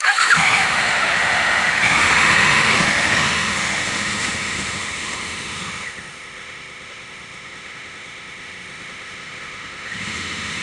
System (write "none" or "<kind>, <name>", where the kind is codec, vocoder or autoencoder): autoencoder, DAC-VAE